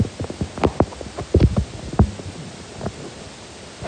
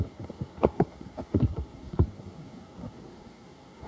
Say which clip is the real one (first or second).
first